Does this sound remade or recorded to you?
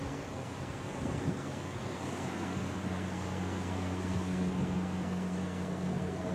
remade